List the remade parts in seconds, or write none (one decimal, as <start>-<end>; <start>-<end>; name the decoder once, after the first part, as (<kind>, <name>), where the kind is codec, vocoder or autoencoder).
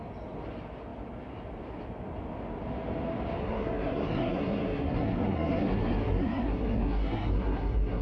3.4-8.0 (codec, SNAC)